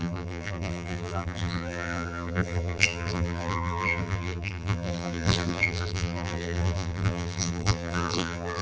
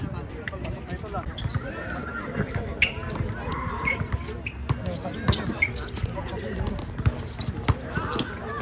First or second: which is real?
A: second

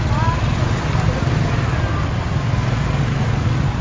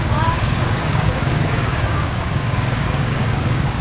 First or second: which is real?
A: first